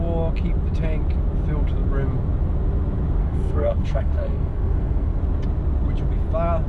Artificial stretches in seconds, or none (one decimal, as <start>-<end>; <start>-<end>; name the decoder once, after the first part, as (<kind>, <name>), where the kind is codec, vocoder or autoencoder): 3.2-5.2 (codec, SNAC)